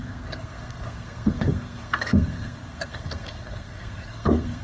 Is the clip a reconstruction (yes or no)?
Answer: yes